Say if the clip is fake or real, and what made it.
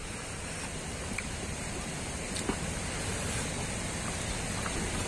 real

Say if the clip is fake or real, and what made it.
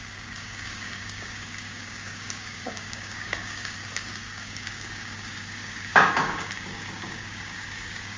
fake, codec, DAC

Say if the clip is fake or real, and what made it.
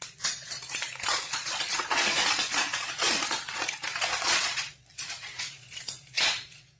fake, vocoder, Vocos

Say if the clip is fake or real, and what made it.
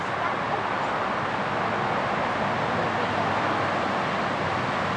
real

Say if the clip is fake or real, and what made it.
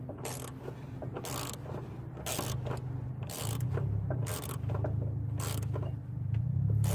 real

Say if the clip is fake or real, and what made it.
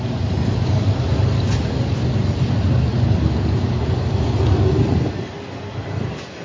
real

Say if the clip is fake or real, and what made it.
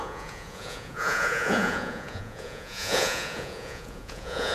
fake, vocoder, Vocos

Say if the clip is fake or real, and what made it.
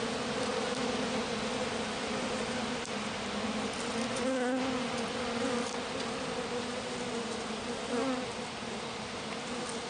real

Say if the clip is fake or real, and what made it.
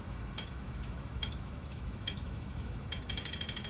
fake, autoencoder, DAC-VAE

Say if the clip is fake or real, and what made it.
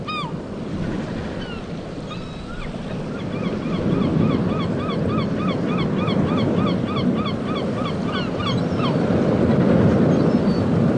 real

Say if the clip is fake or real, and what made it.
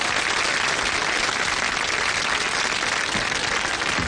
real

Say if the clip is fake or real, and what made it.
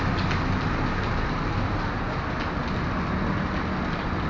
real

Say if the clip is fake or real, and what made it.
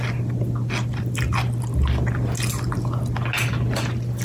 real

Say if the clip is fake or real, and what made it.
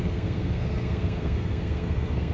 fake, codec, SNAC